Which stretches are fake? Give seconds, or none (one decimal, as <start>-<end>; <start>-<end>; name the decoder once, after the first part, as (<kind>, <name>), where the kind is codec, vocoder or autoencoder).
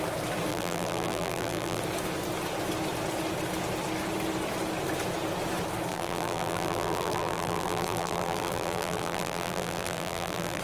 0.5-1.8 (vocoder, BigVGAN v2); 5.9-10.6